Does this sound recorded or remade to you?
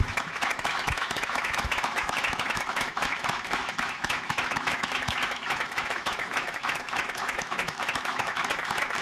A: remade